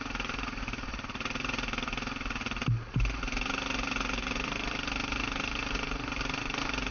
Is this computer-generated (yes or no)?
no